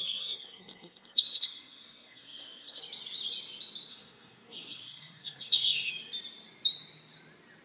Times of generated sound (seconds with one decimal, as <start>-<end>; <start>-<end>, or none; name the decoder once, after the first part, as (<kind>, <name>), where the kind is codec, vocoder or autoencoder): 0.0-2.8 (codec, SNAC); 3.9-5.9